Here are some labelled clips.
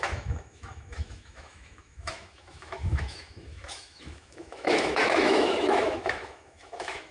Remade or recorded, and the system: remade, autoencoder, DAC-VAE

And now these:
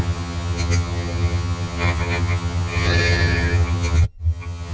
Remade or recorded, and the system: remade, vocoder, HiFi-GAN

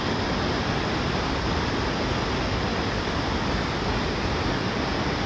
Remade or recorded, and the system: recorded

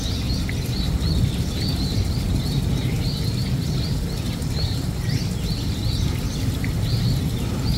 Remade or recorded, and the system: recorded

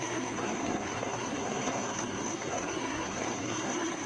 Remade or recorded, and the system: remade, codec, SNAC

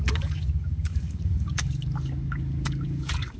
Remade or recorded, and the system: remade, codec, DAC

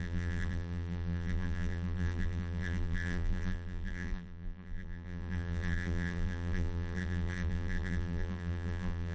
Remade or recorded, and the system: remade, vocoder, BigVGAN v2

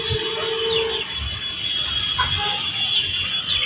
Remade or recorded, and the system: recorded